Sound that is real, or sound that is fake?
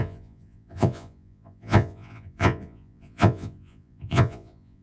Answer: fake